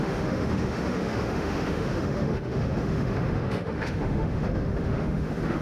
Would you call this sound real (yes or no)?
no